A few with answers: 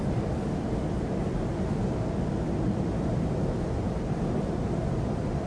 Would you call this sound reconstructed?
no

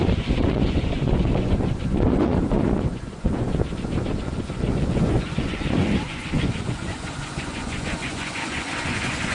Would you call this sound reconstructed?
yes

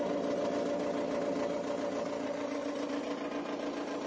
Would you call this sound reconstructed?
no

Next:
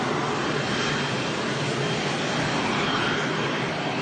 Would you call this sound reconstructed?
no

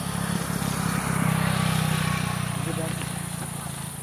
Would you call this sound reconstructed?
no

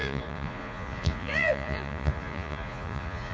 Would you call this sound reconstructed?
yes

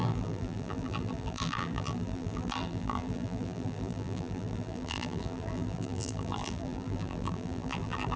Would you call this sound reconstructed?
yes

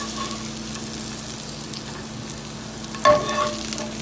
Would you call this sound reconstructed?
no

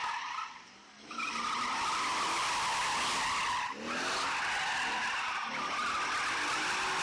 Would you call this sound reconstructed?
no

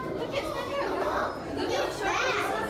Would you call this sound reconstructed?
yes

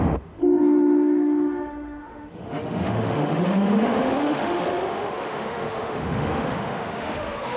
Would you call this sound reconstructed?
yes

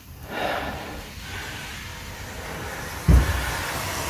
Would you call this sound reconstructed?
no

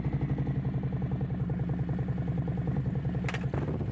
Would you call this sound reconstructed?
no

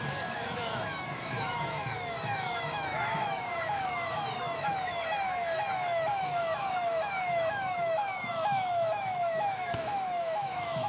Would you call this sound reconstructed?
yes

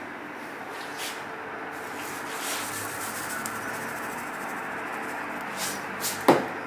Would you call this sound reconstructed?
no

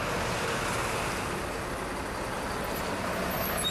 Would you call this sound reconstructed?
no